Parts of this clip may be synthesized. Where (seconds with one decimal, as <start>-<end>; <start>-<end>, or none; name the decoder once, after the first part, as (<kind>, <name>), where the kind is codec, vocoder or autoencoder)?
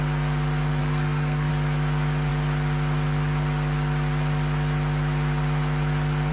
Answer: 0.8-1.5 (codec, SNAC)